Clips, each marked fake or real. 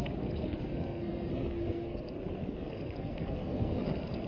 fake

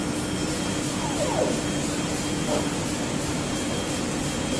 fake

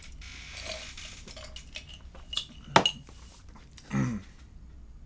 real